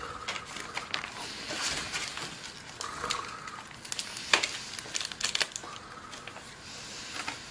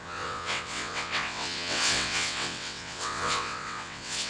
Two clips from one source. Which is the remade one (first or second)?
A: second